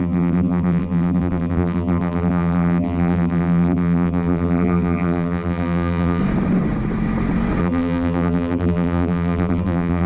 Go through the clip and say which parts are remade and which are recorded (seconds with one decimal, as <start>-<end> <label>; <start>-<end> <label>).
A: 0.0-6.2 remade; 6.2-7.6 recorded; 7.6-10.1 remade